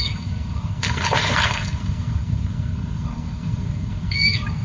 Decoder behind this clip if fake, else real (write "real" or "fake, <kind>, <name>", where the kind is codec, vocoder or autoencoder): fake, codec, SNAC